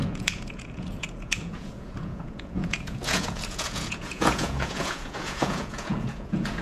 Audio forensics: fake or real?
fake